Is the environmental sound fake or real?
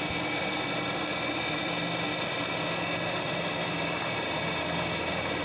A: real